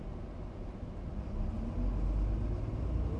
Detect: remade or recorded recorded